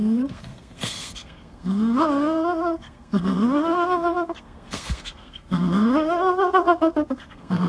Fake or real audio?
fake